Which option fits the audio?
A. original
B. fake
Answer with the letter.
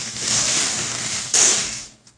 B